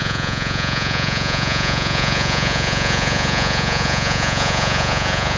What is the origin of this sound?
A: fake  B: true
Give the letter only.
A